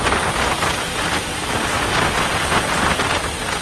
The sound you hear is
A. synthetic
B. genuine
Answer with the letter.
B